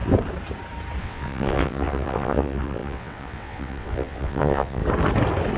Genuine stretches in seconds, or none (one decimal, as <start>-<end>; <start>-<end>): 0.0-1.0; 4.8-5.6

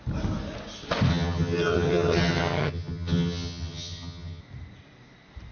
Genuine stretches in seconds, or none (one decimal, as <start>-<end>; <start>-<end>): 0.0-1.1; 4.4-5.5

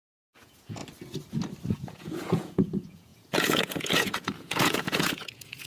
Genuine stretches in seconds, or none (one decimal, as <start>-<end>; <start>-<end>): 0.8-1.7

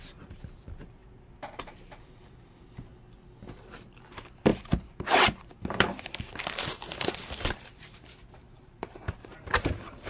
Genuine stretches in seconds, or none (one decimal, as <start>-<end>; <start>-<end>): 2.9-3.5

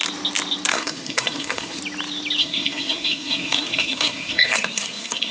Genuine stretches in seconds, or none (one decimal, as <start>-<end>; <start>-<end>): 0.0-0.7; 1.8-2.4

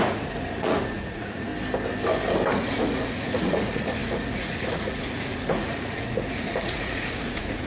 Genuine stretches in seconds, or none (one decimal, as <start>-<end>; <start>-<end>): 1.5-2.5